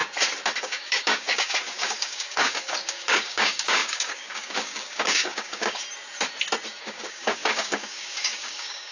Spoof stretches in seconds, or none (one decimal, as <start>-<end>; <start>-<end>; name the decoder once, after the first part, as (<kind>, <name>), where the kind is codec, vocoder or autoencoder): 0.6-5.8 (codec, DAC); 6.8-8.9